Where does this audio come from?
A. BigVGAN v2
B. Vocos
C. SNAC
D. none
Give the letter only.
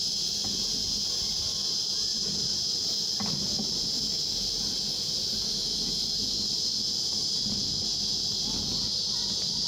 D